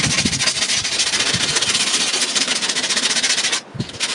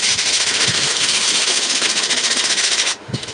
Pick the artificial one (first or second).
second